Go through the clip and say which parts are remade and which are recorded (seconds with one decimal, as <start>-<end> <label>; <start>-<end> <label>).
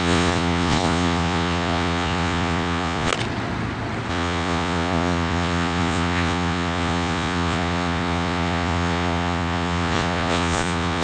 0.0-3.1 remade; 3.1-4.1 recorded; 4.1-11.0 remade